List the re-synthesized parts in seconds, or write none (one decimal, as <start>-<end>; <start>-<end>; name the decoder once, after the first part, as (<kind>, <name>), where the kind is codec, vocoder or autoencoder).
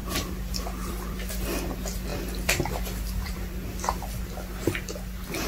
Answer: 0.0-1.4 (vocoder, BigVGAN v2); 2.1-4.2